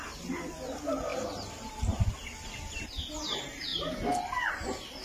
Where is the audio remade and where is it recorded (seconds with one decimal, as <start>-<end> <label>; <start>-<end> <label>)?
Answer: 0.0-5.0 recorded